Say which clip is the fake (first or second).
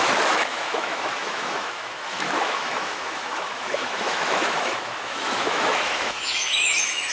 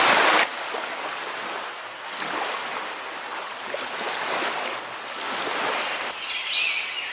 first